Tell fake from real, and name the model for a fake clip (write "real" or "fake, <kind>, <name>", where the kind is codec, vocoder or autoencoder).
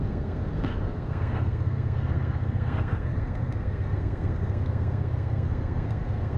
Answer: fake, codec, SNAC